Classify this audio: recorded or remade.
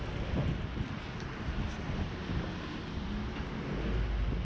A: recorded